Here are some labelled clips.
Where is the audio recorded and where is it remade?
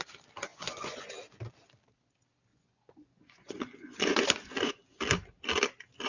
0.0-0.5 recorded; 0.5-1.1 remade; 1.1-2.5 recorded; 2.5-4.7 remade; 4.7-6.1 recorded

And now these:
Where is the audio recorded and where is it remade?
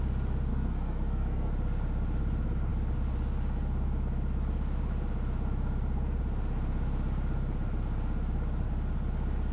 0.0-0.5 recorded; 0.5-1.5 remade; 1.5-9.5 recorded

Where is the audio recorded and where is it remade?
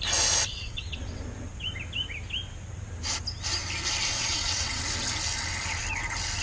0.0-0.5 recorded; 0.5-1.2 remade; 1.2-4.2 recorded; 4.2-4.8 remade; 4.8-6.4 recorded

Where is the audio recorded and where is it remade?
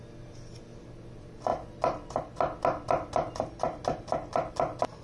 0.0-5.0 recorded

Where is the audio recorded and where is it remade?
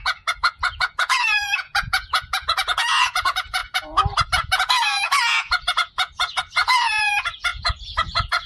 0.0-8.5 remade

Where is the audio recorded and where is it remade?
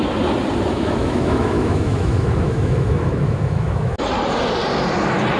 0.0-0.7 recorded; 0.7-3.9 remade; 3.9-5.4 recorded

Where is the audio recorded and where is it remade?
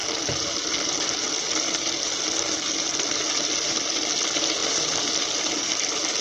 0.0-6.2 recorded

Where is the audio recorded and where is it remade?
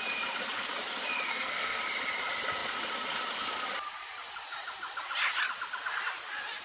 0.0-1.3 recorded; 1.3-1.8 remade; 1.8-6.6 recorded